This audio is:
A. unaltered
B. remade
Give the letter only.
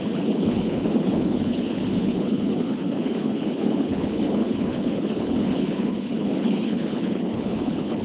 B